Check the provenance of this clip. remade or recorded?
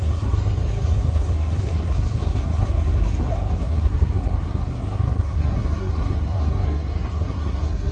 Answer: remade